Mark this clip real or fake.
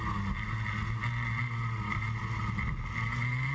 real